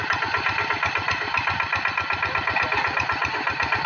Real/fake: real